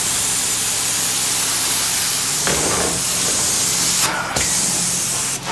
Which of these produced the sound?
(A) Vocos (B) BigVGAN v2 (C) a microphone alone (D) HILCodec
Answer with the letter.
C